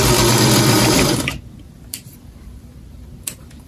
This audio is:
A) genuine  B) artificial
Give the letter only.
B